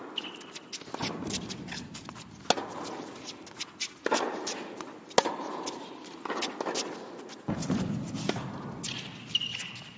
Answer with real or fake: real